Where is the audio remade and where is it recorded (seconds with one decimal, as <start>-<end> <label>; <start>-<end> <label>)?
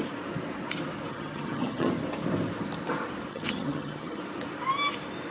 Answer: 0.0-1.1 recorded; 1.1-1.9 remade; 1.9-3.3 recorded; 3.3-4.2 remade; 4.2-5.3 recorded